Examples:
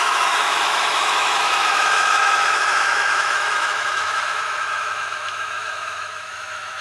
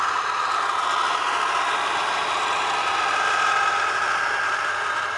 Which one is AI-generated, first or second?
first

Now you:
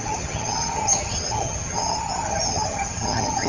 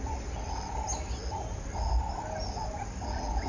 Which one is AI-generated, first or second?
first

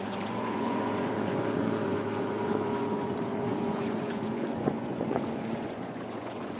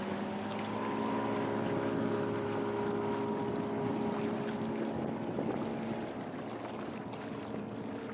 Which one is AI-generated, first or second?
first